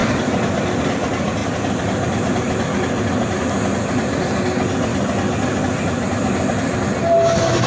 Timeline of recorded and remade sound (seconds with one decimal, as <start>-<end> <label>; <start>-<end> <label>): 0.0-0.8 remade; 0.8-1.4 recorded; 1.4-3.4 remade; 3.4-7.7 recorded